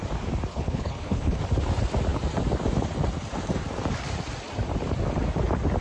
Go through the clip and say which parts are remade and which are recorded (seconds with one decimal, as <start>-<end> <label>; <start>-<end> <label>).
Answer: 0.0-0.5 recorded; 0.5-1.4 remade; 1.4-5.8 recorded

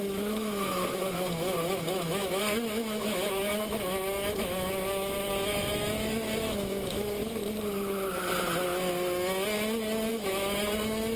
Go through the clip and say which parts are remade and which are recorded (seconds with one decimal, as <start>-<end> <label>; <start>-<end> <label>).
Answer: 0.0-7.4 remade; 7.4-10.1 recorded; 10.1-11.2 remade